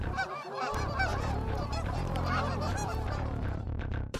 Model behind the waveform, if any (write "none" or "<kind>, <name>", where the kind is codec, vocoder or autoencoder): vocoder, BigVGAN v2